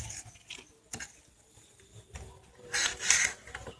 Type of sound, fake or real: real